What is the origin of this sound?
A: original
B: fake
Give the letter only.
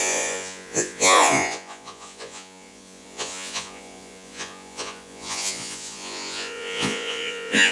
B